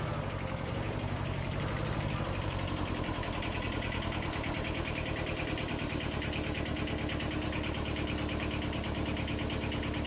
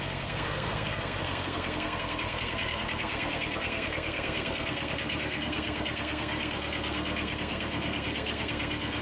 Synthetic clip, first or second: second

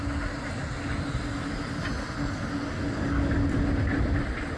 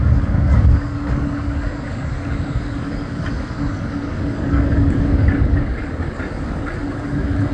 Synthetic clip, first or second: second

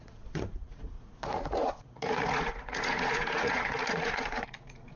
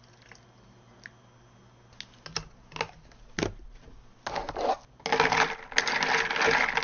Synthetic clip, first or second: first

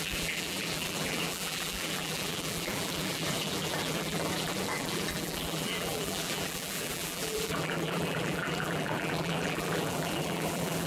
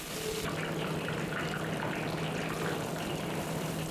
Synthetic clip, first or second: first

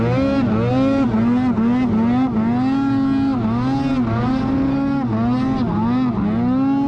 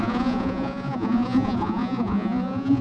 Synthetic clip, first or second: second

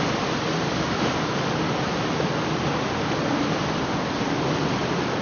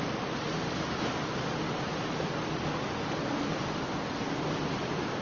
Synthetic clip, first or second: first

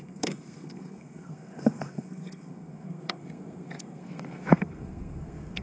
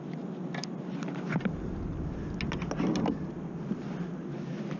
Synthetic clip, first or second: first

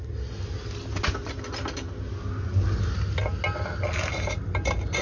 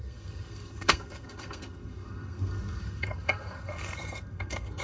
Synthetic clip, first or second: second